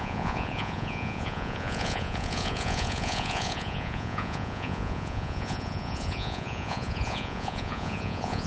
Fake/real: fake